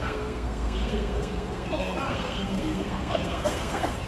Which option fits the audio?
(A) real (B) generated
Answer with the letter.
B